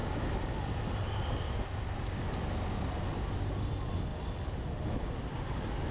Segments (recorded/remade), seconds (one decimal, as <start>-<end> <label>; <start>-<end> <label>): 0.0-5.9 recorded

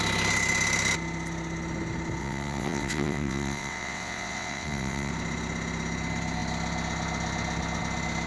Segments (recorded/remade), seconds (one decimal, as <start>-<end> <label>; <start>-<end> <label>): 0.0-2.2 recorded; 2.2-5.1 remade; 5.1-8.3 recorded

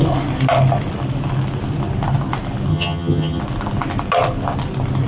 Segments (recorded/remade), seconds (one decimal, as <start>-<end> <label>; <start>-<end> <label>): 0.0-2.7 recorded; 2.7-3.4 remade; 3.4-5.1 recorded

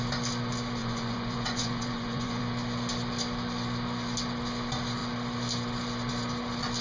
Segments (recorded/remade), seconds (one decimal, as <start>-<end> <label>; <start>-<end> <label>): 0.0-0.8 recorded; 0.8-2.4 remade; 2.4-6.8 recorded